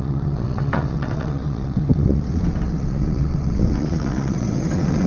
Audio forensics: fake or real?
fake